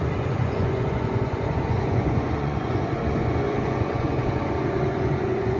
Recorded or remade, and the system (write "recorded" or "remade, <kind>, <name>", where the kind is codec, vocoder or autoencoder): remade, vocoder, Vocos